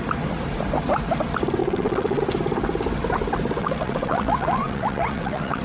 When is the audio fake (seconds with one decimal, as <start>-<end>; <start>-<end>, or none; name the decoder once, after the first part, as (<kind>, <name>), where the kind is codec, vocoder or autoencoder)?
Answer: 1.6-2.2 (vocoder, WaveNeXt); 3.6-5.6